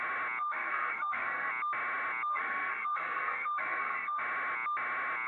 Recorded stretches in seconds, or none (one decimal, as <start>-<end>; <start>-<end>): 0.0-0.4; 1.5-2.3; 4.2-5.3